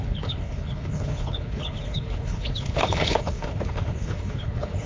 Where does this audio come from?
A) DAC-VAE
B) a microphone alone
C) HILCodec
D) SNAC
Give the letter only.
C